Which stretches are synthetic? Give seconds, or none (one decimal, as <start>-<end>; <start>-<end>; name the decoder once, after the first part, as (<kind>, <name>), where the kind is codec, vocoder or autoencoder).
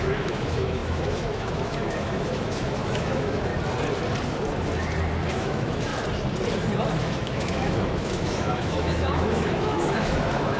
0.0-3.5 (autoencoder, DAC-VAE); 5.3-5.9; 7.0-10.6